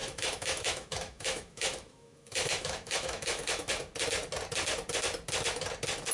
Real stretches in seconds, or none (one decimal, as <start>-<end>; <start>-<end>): 3.7-6.1